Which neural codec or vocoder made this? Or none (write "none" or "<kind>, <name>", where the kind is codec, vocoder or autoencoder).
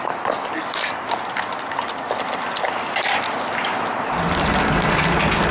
none